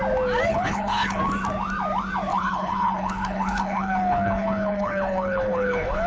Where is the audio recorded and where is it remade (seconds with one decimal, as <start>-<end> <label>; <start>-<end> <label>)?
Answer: 0.0-0.5 recorded; 0.5-1.2 remade; 1.2-2.3 recorded; 2.3-6.1 remade

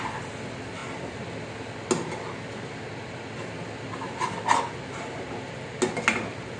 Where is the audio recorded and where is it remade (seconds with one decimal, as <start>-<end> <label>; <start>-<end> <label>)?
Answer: 0.0-6.6 recorded

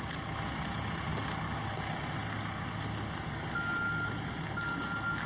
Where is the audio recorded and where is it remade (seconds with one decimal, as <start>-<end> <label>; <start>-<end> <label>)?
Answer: 0.0-5.3 recorded

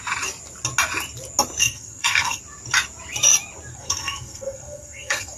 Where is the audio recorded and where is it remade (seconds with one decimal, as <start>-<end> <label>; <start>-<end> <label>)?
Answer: 0.0-1.6 recorded; 1.6-2.4 remade; 2.4-3.7 recorded; 3.7-5.4 remade

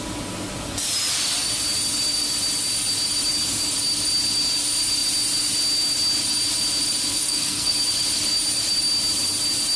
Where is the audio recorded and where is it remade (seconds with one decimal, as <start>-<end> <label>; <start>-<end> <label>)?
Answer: 0.0-7.1 recorded; 7.1-7.7 remade; 7.7-9.8 recorded